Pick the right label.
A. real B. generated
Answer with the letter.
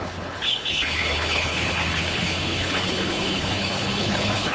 B